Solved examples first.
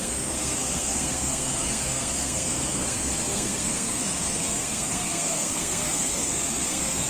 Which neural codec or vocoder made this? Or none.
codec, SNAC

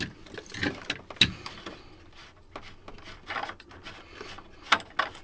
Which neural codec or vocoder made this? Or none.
none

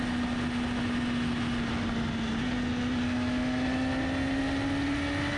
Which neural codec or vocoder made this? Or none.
none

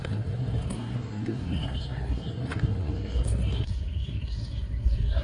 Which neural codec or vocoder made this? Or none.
codec, SNAC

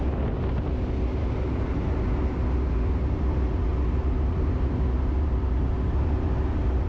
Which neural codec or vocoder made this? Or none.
none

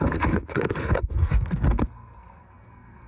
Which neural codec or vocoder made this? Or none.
codec, SNAC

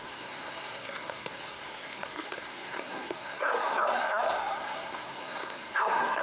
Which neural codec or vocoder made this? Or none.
codec, SNAC